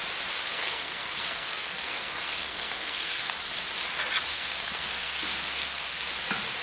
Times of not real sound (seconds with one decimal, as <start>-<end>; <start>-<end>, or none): 0.5-3.3; 4.3-6.1